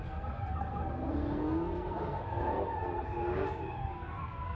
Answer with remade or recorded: remade